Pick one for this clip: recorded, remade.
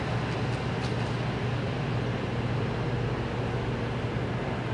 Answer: recorded